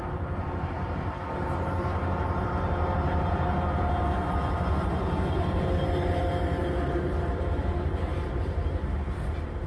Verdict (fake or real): fake